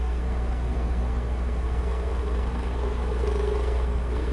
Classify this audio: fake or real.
fake